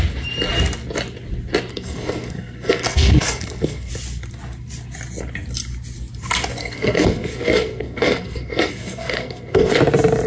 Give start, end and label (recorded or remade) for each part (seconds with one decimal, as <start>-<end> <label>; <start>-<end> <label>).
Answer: 0.0-1.7 recorded; 1.7-3.9 remade; 3.9-6.6 recorded; 6.6-9.7 remade; 9.7-10.3 recorded